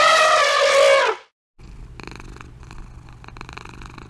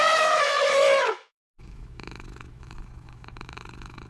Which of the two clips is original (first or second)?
first